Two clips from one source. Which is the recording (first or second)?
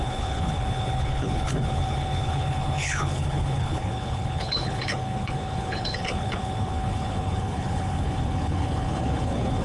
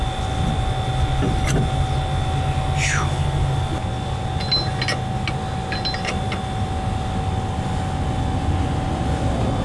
second